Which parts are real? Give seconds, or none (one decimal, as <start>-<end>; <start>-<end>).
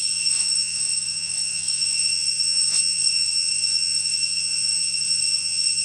none